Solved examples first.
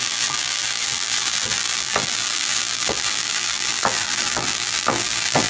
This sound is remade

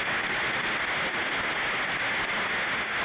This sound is recorded